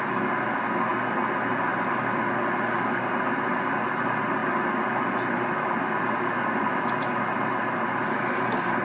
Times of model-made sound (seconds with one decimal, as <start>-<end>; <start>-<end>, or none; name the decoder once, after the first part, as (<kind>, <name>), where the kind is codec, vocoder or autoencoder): none